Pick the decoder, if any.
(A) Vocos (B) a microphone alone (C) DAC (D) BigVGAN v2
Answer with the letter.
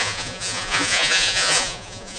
A